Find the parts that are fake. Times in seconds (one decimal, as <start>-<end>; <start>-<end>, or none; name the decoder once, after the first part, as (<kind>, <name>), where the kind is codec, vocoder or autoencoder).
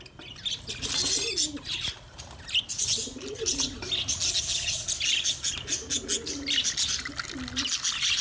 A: none